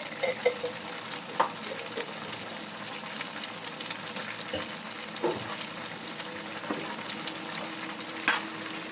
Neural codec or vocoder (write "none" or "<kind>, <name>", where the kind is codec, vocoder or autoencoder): none